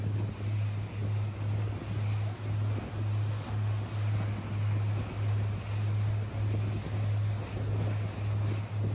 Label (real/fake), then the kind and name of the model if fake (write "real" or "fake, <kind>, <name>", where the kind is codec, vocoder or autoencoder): real